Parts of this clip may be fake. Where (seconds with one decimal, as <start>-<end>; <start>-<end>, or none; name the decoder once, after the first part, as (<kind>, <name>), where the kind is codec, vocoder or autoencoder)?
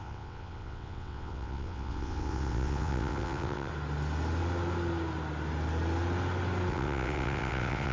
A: 0.0-3.7 (vocoder, WaveNeXt); 6.7-7.9